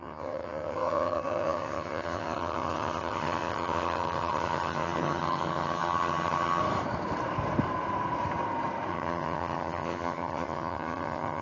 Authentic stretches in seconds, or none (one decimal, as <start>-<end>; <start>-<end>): 6.6-8.9